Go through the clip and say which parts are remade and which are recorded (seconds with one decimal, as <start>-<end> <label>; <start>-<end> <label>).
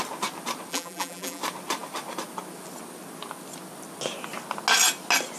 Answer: 0.0-0.7 recorded; 0.7-1.4 remade; 1.4-5.4 recorded